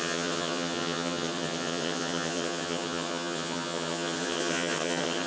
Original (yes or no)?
no